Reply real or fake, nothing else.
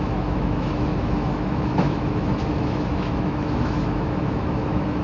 fake